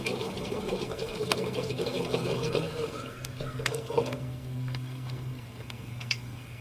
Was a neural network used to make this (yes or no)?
yes